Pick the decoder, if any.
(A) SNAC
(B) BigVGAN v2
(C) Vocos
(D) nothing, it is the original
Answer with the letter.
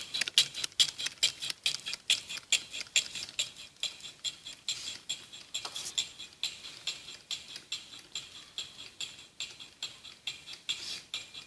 D